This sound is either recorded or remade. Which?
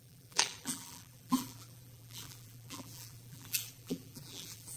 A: remade